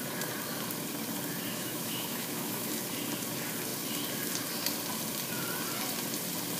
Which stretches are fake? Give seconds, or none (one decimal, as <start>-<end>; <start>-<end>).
1.5-2.7